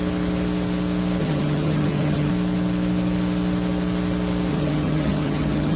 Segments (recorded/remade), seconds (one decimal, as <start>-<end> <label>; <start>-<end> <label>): 0.0-1.2 recorded; 1.2-2.3 remade; 2.3-4.5 recorded; 4.5-5.8 remade